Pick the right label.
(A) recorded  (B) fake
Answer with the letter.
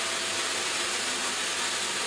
A